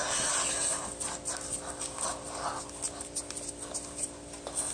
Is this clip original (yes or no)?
yes